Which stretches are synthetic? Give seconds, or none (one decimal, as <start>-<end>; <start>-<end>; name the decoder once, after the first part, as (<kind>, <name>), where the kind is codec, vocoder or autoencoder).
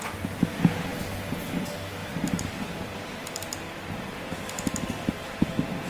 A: 2.0-4.2 (vocoder, BigVGAN v2); 5.2-5.9